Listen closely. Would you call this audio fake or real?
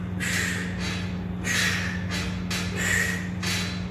real